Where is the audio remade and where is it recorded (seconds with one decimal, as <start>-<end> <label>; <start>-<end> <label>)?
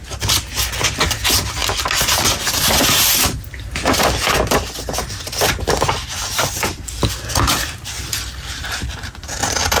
0.0-9.8 recorded